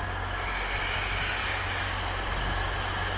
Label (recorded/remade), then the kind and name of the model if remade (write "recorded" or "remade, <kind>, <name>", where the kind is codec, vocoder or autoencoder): recorded